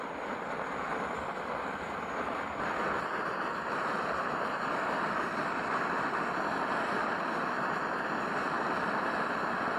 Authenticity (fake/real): real